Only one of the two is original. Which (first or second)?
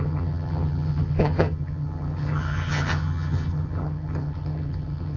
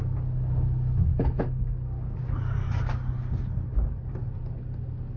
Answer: second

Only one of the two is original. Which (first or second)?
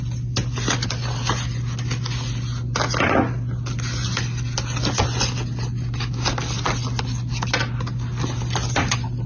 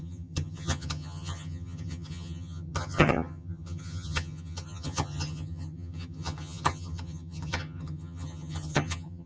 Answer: first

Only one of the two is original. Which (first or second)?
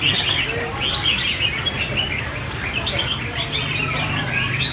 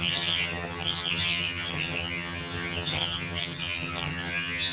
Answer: first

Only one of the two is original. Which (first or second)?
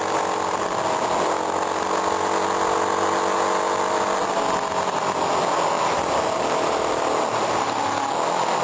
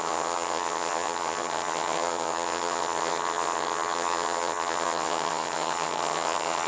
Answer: first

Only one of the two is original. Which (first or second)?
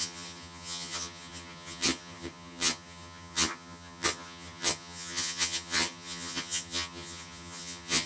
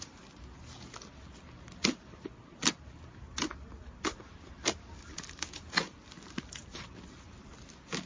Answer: second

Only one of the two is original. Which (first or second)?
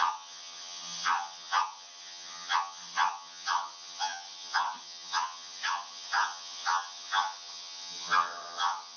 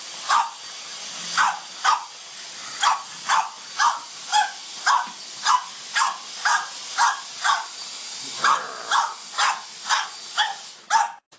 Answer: second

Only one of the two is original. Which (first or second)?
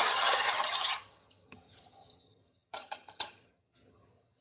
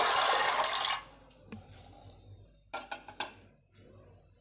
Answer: second